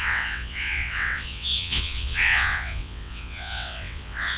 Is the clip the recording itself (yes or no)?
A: no